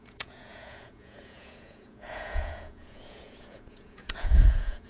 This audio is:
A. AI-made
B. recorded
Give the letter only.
A